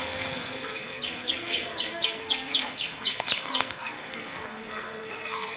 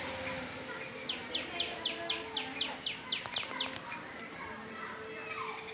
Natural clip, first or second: second